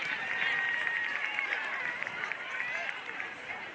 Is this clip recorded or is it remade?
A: remade